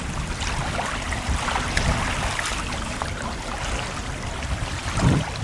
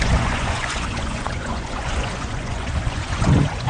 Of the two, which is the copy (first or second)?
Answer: second